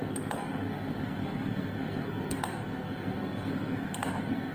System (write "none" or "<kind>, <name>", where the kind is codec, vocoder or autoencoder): codec, SNAC